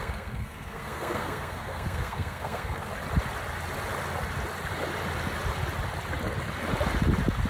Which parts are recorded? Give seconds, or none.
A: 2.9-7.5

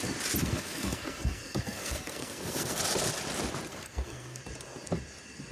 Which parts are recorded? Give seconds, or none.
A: 0.0-0.4; 2.8-3.7; 4.4-5.5